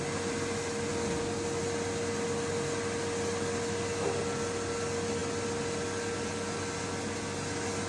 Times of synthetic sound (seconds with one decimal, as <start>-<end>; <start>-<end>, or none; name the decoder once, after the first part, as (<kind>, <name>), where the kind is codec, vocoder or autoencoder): none